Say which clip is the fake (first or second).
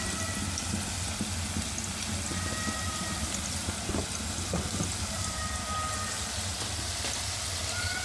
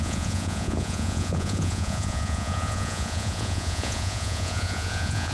second